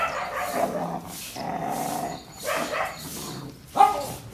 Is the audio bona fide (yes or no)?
yes